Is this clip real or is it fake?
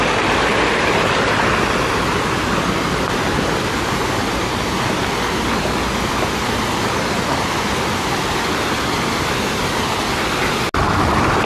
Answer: real